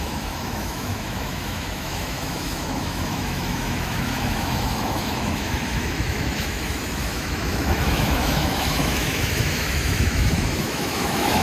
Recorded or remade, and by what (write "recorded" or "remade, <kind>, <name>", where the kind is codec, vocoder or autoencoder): remade, autoencoder, DAC-VAE